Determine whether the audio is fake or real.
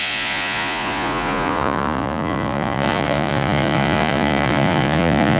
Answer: fake